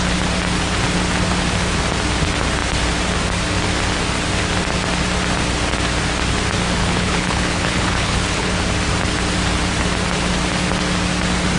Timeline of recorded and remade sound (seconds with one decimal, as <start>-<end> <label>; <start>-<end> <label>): 0.0-6.8 recorded; 6.8-8.6 remade; 8.6-11.6 recorded